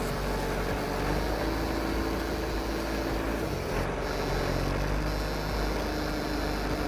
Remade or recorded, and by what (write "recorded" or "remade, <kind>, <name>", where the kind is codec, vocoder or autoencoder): recorded